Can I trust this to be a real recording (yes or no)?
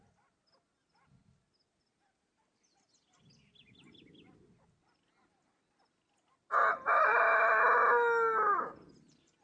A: yes